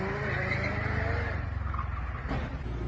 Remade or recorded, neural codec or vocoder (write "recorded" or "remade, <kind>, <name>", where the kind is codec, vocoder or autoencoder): recorded